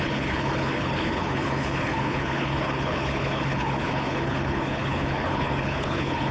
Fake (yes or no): yes